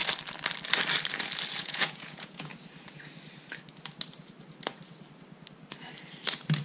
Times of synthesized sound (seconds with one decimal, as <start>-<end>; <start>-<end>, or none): 1.6-2.5